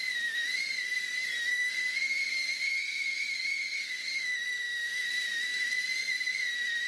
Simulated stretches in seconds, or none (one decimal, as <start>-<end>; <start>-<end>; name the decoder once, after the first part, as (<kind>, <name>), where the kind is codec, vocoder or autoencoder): 1.5-5.1 (autoencoder, DAC-VAE)